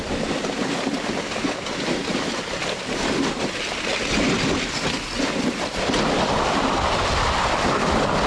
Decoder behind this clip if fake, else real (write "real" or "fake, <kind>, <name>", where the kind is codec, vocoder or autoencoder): real